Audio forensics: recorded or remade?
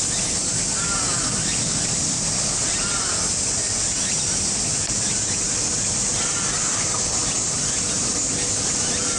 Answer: recorded